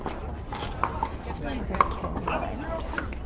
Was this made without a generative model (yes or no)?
yes